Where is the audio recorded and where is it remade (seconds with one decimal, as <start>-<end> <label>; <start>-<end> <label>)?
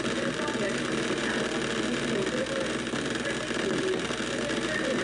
0.0-5.0 recorded